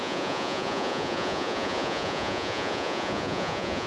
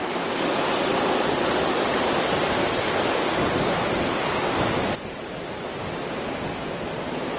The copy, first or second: first